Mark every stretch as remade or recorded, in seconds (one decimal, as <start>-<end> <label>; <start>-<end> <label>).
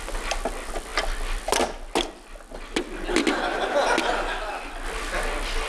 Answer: 0.0-5.7 recorded